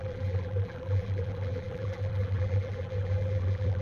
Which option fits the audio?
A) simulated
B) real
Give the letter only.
A